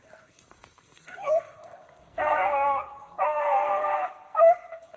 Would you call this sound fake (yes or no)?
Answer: yes